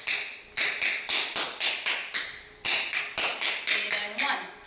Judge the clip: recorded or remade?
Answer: recorded